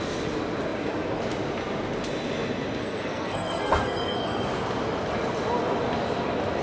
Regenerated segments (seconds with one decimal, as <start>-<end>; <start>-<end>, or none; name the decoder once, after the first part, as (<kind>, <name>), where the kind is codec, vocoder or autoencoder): 2.8-4.5 (codec, SNAC)